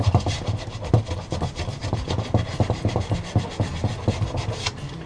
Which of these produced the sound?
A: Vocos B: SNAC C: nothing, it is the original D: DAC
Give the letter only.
C